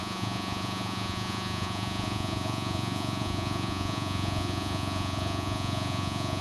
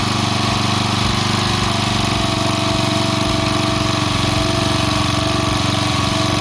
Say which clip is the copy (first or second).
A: first